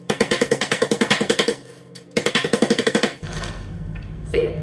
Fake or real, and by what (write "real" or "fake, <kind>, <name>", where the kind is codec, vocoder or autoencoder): fake, codec, SNAC